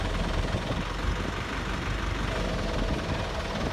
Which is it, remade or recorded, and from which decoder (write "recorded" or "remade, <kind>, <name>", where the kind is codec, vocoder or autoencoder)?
recorded